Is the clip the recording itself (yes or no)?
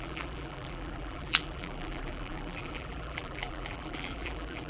no